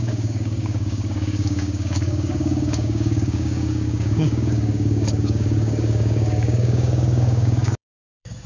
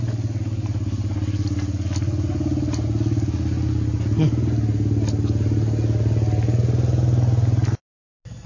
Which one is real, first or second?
second